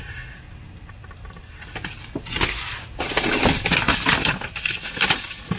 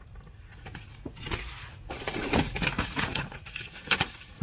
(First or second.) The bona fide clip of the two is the first